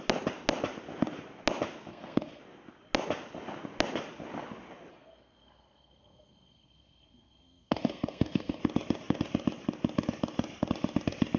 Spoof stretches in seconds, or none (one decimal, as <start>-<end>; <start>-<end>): 1.9-2.4; 4.9-8.6